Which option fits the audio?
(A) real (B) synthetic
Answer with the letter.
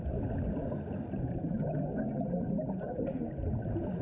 A